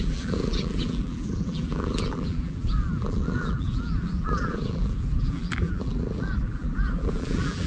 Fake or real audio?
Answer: fake